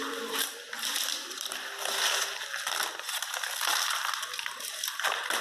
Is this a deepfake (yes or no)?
yes